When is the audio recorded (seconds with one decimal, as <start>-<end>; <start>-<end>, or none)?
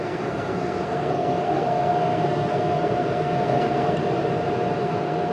4.0-4.8